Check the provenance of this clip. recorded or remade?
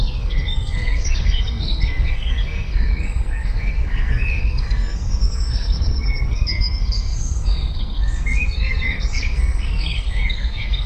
remade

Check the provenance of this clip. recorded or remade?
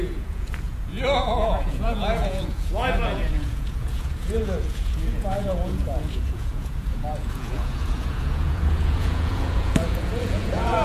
remade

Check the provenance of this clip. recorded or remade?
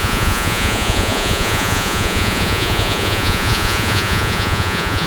remade